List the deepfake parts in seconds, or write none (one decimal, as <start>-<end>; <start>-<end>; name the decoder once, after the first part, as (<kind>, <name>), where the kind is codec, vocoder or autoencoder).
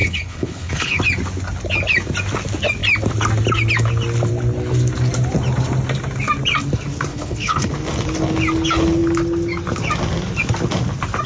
0.0-1.0 (codec, HILCodec); 7.1-7.7